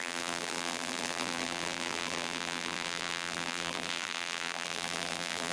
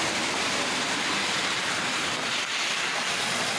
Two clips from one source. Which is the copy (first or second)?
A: first